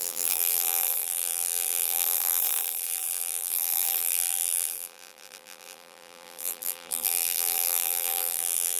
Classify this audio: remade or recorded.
remade